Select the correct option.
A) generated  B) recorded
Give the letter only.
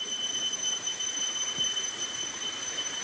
A